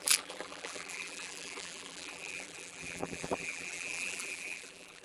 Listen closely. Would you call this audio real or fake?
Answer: fake